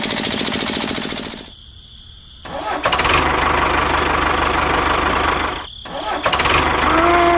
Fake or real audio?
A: real